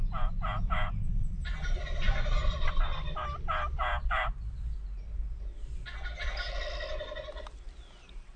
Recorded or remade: recorded